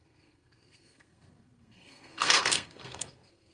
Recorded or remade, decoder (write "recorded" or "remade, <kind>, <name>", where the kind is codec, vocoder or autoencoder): remade, codec, SNAC